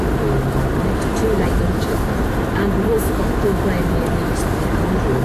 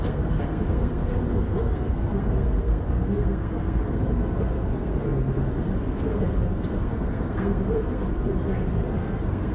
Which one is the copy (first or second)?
second